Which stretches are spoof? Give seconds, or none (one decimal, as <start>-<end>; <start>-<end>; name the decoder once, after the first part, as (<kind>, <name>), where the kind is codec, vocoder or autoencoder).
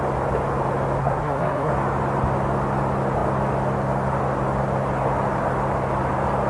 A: 1.0-1.7 (codec, SNAC)